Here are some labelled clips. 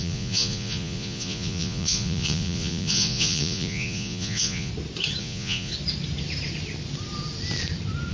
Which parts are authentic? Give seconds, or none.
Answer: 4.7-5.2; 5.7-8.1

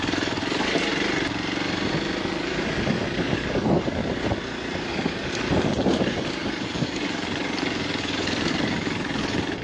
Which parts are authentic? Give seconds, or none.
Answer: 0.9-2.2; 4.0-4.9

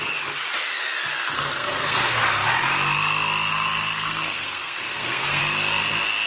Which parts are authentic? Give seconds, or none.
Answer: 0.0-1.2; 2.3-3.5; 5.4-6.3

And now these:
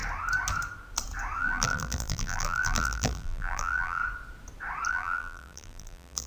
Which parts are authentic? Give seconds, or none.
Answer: 0.0-1.4; 4.0-4.9

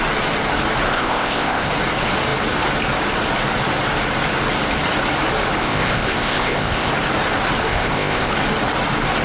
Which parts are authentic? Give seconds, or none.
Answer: 0.0-0.9; 1.7-5.6; 6.9-7.7; 8.3-9.2

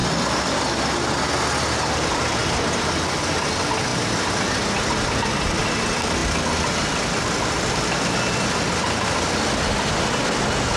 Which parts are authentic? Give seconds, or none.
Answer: 0.0-10.8

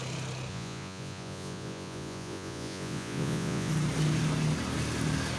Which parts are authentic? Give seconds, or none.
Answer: 0.0-0.5; 3.7-5.4

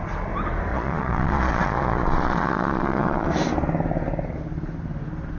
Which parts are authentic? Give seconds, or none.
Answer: 0.0-0.7; 3.3-5.4